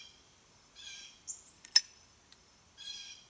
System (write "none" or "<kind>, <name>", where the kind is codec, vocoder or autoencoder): none